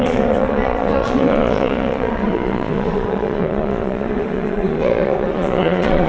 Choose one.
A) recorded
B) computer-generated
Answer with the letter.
B